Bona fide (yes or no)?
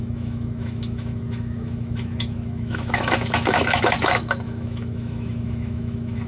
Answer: no